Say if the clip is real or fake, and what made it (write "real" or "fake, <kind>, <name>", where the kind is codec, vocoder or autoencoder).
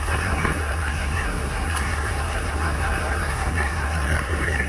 fake, codec, SNAC